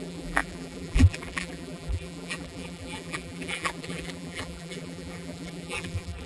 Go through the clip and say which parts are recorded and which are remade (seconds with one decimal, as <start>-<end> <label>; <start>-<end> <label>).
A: 0.0-6.3 remade